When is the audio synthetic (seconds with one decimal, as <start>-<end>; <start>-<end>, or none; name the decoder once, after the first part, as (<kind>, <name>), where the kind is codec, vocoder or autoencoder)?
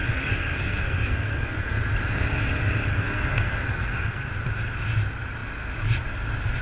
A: 0.0-1.8 (codec, SNAC); 2.9-4.3